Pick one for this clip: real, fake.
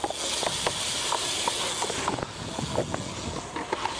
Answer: real